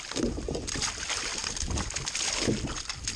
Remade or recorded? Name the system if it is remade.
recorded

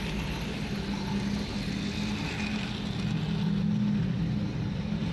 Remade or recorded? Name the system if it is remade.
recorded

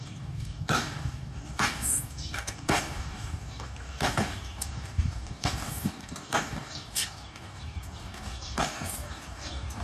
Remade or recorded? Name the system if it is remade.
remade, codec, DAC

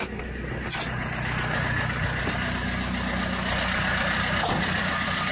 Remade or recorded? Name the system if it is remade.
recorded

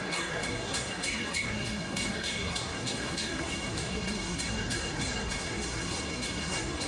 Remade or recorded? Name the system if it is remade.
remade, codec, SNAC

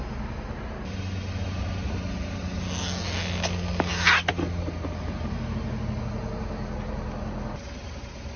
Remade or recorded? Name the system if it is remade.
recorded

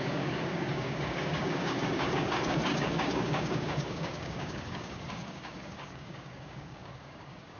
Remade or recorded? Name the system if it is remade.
remade, codec, DAC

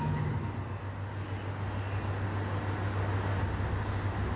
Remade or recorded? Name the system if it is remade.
recorded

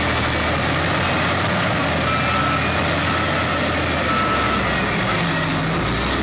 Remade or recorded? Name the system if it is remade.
recorded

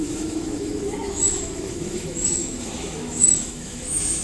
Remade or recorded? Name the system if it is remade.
remade, autoencoder, DAC-VAE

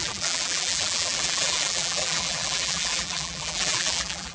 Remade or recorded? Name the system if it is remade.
remade, vocoder, BigVGAN v2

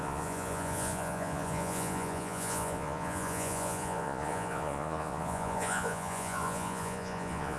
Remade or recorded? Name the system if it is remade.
remade, vocoder, Vocos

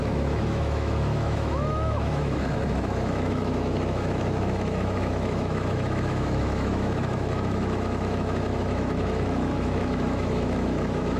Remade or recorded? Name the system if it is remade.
remade, autoencoder, DAC-VAE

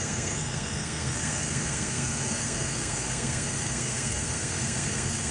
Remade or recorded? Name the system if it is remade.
remade, codec, SNAC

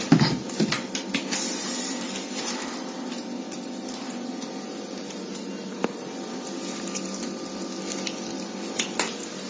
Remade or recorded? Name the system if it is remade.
recorded